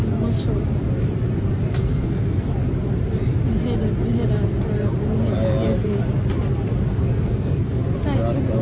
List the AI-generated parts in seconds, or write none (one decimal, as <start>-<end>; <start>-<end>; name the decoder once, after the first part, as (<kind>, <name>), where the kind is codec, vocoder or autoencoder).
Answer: 1.8-2.5 (codec, SNAC); 6.9-7.8